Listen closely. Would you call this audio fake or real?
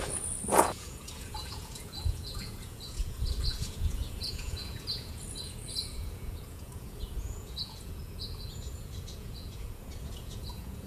fake